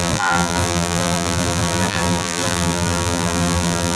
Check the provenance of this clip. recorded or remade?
remade